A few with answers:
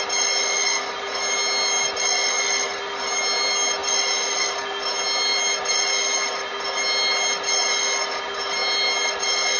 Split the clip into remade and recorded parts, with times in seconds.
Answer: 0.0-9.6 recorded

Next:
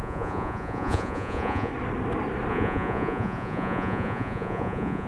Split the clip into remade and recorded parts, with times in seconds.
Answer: 0.0-1.7 remade; 1.7-2.5 recorded; 2.5-5.1 remade